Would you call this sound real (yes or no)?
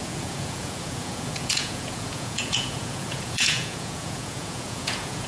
no